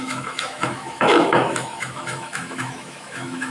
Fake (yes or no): yes